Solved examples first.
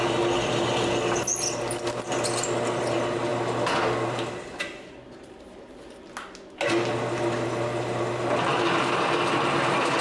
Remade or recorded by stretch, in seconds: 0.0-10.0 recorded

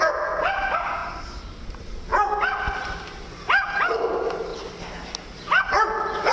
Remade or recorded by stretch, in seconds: 0.0-6.3 recorded

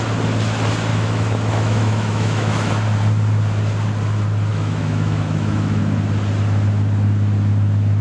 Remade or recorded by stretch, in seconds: 0.0-0.9 recorded; 0.9-2.7 remade; 2.7-4.5 recorded; 4.5-5.8 remade; 5.8-8.0 recorded

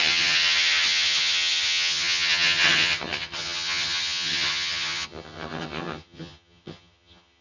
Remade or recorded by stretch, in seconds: 0.0-7.4 remade

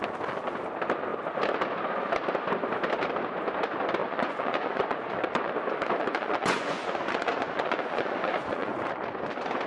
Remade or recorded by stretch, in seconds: 0.0-4.0 recorded; 4.0-5.5 remade; 5.5-6.0 recorded; 6.0-9.0 remade; 9.0-9.7 recorded

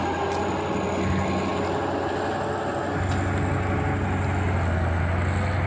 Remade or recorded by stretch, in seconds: 0.0-5.7 recorded

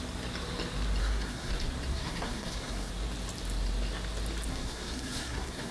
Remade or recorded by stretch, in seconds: 0.0-1.0 recorded; 1.0-1.5 remade; 1.5-1.9 recorded; 1.9-2.9 remade; 2.9-4.5 recorded; 4.5-5.7 remade

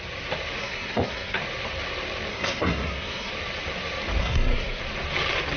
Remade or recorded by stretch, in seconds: 0.0-0.6 recorded; 0.6-1.4 remade; 1.4-2.3 recorded; 2.3-3.3 remade; 3.3-4.2 recorded; 4.2-4.8 remade; 4.8-5.6 recorded